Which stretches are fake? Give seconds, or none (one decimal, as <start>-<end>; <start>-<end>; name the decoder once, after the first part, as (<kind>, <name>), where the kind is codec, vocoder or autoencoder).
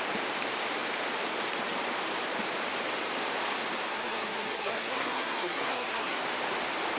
3.9-6.2 (codec, SNAC)